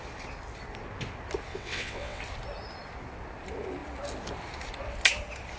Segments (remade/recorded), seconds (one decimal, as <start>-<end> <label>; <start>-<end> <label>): 0.0-1.5 recorded; 1.5-2.2 remade; 2.2-5.6 recorded